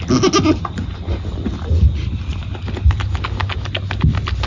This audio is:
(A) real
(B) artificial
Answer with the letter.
A